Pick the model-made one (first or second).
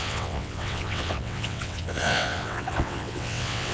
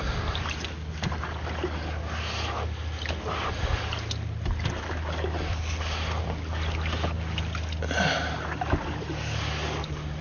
first